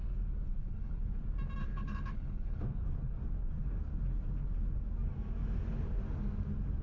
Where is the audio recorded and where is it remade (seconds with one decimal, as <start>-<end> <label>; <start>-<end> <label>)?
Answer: 0.0-0.6 recorded; 0.6-1.2 remade; 1.2-1.6 recorded; 1.6-2.6 remade; 2.6-6.8 recorded